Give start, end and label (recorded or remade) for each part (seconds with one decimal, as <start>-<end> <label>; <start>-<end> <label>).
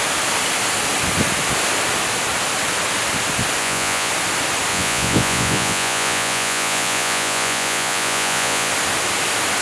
0.0-3.6 recorded; 3.6-4.1 remade; 4.1-4.7 recorded; 4.7-8.7 remade; 8.7-9.6 recorded